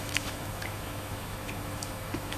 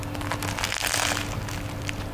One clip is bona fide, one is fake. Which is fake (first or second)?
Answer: first